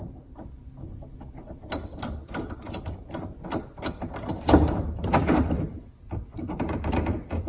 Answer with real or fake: real